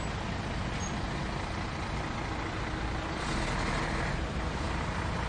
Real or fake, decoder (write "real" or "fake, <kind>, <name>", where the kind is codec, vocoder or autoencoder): real